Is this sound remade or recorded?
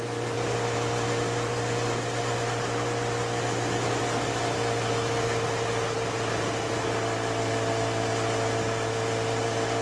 recorded